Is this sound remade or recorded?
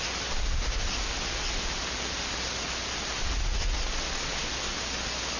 recorded